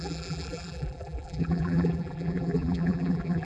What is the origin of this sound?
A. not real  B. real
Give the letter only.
A